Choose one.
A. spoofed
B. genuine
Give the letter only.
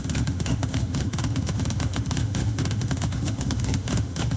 A